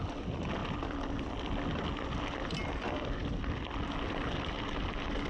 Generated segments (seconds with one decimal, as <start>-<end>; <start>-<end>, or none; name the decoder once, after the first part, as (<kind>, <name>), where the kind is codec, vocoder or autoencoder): none